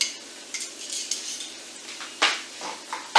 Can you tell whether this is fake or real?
real